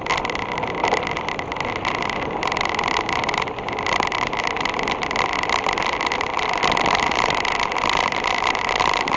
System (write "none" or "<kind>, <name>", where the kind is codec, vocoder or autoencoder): vocoder, BigVGAN v2